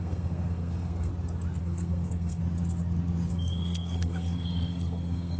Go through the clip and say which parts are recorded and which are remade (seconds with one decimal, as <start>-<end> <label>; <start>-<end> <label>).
0.0-1.1 remade; 1.1-1.6 recorded; 1.6-2.4 remade; 2.4-3.3 recorded; 3.3-5.4 remade